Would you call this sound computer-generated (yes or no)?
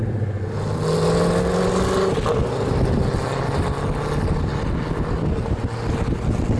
no